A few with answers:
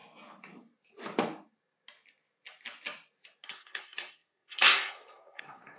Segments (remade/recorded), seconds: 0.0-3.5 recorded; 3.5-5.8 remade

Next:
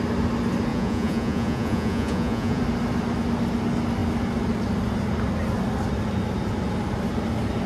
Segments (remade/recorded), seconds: 0.0-0.7 recorded; 0.7-2.6 remade; 2.6-7.7 recorded

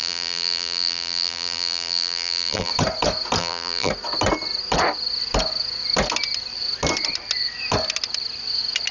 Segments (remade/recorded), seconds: 0.0-2.7 remade; 2.7-3.4 recorded; 3.4-3.9 remade; 3.9-8.9 recorded

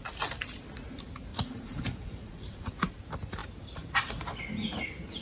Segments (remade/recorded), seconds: 0.0-1.3 recorded; 1.3-2.7 remade; 2.7-5.2 recorded

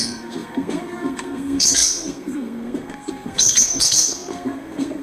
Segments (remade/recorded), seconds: 0.0-5.0 remade

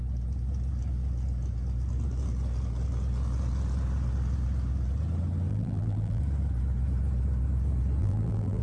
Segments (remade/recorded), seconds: 0.0-5.5 recorded; 5.5-6.2 remade; 6.2-8.0 recorded; 8.0-8.6 remade